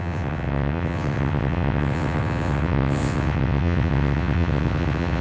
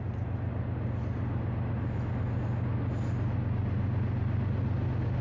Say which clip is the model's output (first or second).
first